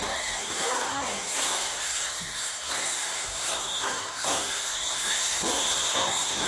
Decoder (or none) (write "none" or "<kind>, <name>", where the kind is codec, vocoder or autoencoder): codec, SNAC